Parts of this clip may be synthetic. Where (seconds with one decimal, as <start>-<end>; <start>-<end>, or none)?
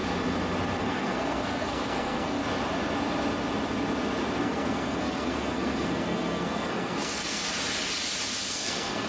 0.8-2.4; 4.4-7.4; 8.5-9.1